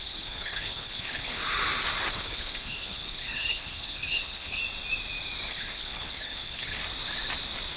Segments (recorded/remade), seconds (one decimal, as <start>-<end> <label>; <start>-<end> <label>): 0.0-1.4 remade; 1.4-2.1 recorded; 2.1-4.6 remade; 4.6-5.5 recorded; 5.5-6.8 remade; 6.8-7.8 recorded